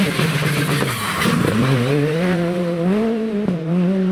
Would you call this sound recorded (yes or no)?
no